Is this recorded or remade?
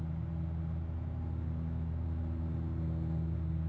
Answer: recorded